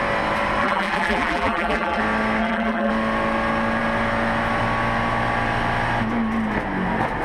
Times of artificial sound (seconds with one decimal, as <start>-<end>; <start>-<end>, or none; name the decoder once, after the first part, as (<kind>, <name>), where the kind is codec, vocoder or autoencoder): 0.6-2.0 (vocoder, BigVGAN v2); 2.4-2.9